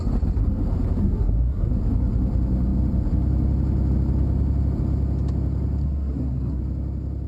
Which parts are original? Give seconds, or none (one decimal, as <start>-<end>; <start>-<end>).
0.0-1.0; 1.7-5.8; 6.6-7.3